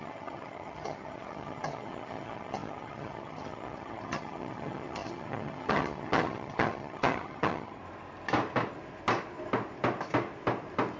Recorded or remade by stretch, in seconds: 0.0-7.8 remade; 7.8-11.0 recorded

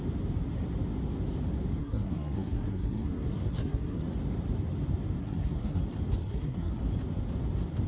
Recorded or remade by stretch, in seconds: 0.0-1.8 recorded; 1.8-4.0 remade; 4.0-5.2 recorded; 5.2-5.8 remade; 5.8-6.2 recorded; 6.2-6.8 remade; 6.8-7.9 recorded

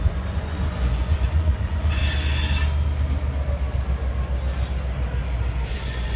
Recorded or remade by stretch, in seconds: 0.0-2.0 remade; 2.0-5.7 recorded; 5.7-6.2 remade

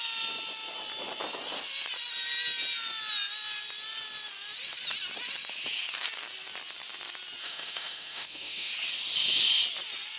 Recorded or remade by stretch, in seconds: 0.0-7.4 recorded; 7.4-8.7 remade; 8.7-10.2 recorded

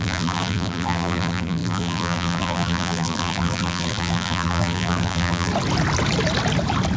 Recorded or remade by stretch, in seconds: 0.0-5.5 remade; 5.5-7.0 recorded